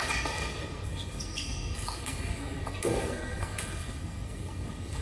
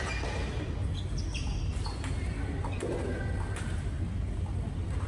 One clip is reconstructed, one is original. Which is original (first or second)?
second